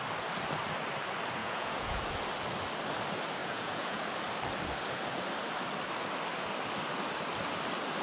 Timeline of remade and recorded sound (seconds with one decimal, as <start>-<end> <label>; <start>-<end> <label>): 0.0-1.4 recorded; 1.4-2.0 remade; 2.0-3.4 recorded; 3.4-4.0 remade; 4.0-8.0 recorded